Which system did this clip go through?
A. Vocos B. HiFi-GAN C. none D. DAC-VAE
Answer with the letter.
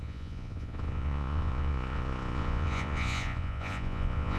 A